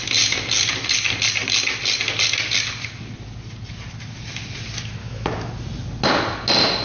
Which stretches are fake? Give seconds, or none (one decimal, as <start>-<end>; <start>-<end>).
5.0-5.5